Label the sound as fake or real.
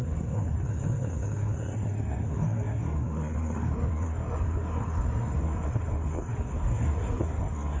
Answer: fake